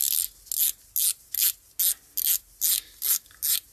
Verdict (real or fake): real